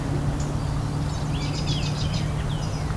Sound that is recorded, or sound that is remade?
recorded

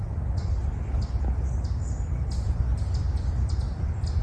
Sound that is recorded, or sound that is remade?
recorded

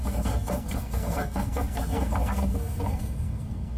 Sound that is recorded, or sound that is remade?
remade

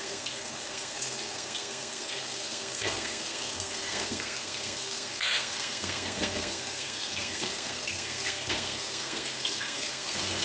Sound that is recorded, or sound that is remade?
remade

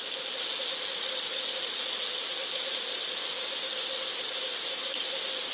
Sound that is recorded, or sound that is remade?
recorded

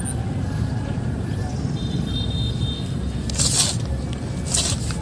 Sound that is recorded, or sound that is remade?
recorded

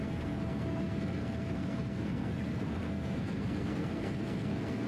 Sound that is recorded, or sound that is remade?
remade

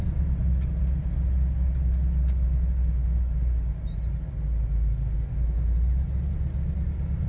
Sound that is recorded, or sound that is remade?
recorded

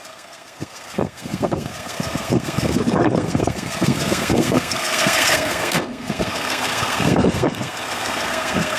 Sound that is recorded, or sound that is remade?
remade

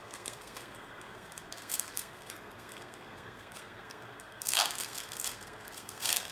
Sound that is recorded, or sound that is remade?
remade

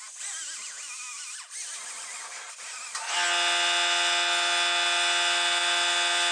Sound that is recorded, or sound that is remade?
recorded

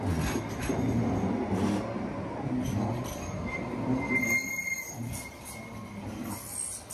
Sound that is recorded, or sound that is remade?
recorded